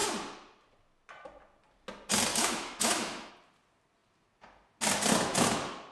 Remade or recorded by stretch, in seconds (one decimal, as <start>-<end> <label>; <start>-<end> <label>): 0.0-2.3 recorded; 2.3-3.3 remade; 3.3-5.9 recorded